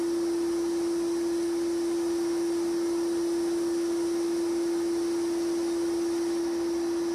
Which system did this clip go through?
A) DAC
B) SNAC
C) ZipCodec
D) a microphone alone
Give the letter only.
D